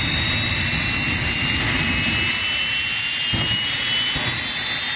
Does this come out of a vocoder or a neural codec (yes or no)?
no